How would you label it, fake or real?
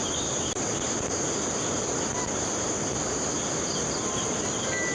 real